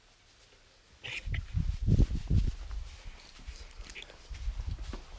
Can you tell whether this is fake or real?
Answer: real